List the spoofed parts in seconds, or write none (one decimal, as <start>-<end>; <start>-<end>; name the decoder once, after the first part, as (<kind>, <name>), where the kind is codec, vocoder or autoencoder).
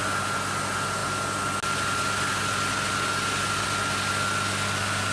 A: none